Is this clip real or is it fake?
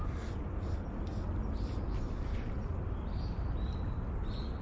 real